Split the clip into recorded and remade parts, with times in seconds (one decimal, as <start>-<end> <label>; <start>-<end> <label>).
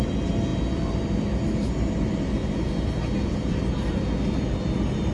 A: 0.0-5.1 recorded